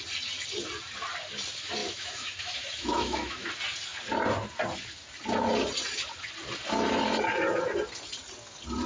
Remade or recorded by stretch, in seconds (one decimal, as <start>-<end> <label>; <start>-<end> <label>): 0.0-1.8 recorded; 1.8-3.5 remade; 3.5-8.9 recorded